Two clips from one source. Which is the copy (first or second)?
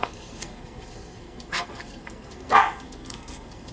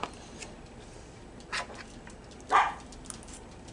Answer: first